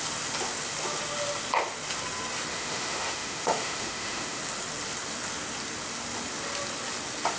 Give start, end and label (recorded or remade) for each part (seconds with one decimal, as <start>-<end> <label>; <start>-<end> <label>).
0.0-2.5 recorded; 2.5-4.4 remade; 4.4-7.4 recorded